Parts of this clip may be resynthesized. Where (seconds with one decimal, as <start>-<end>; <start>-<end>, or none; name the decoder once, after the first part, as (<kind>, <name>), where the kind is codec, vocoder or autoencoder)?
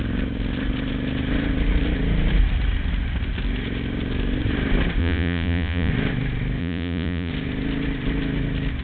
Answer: 5.0-5.9 (vocoder, Vocos); 6.6-7.3